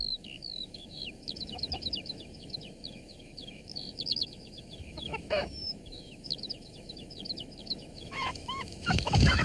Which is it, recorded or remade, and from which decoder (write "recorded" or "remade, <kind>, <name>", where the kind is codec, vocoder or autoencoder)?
remade, autoencoder, DAC-VAE